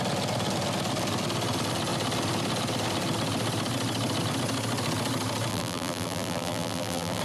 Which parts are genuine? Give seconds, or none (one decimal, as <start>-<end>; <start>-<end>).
0.0-5.5